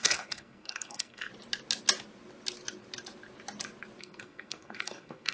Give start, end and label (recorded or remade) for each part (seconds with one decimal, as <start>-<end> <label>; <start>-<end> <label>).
0.0-1.3 remade; 1.3-4.0 recorded; 4.0-5.3 remade